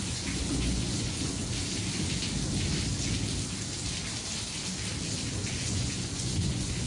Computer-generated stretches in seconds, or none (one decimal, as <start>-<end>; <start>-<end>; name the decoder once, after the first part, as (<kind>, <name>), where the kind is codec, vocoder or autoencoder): 0.0-1.4 (vocoder, Vocos); 5.5-6.9